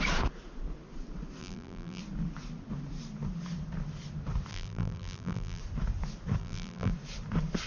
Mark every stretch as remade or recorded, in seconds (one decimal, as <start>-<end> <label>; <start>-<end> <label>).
0.0-1.4 recorded; 1.4-2.0 remade; 2.0-4.5 recorded; 4.5-5.6 remade; 5.6-6.4 recorded; 6.4-6.9 remade; 6.9-7.7 recorded